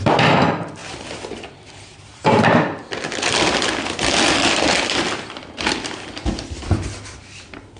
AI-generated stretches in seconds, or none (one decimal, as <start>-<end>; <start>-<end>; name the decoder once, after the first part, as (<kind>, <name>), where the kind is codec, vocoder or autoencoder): 0.0-7.8 (vocoder, BigVGAN v2)